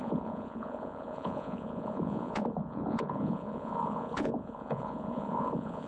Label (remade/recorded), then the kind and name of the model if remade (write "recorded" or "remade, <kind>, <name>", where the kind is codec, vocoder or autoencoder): remade, vocoder, Vocos